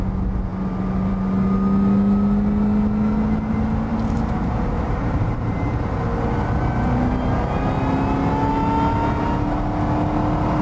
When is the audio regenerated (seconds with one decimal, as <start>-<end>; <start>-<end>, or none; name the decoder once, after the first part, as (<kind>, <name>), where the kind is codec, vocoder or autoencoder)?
3.9-5.8 (vocoder, BigVGAN v2)

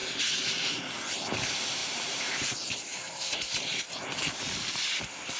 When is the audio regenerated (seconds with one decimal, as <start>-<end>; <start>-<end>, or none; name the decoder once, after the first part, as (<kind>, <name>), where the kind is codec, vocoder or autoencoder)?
1.8-3.4 (vocoder, BigVGAN v2)

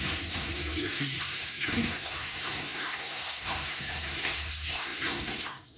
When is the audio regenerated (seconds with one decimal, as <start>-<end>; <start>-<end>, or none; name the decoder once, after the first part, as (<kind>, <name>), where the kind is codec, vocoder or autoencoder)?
0.0-5.8 (codec, SNAC)

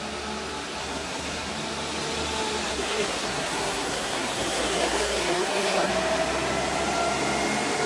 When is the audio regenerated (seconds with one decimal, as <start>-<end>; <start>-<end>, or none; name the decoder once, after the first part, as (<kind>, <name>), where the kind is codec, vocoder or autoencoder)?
0.8-1.5 (codec, SNAC); 2.7-5.9

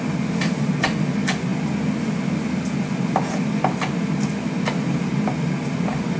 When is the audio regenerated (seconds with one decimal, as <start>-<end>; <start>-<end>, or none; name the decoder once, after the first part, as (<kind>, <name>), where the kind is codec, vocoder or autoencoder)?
none

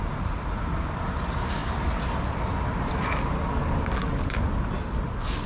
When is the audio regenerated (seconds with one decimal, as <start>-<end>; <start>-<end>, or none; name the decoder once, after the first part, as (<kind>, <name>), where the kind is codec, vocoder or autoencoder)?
none

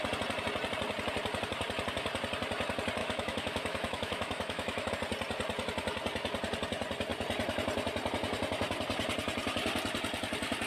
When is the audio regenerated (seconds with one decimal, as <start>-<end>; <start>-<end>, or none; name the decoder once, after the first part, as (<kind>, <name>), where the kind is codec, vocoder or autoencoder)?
3.0-4.9 (autoencoder, DAC-VAE)

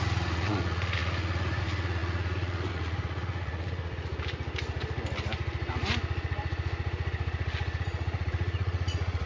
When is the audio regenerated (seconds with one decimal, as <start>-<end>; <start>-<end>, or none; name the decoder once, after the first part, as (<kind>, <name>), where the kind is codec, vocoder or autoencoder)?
0.0-4.1 (vocoder, Vocos); 7.8-9.3